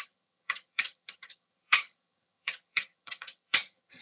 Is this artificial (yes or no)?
yes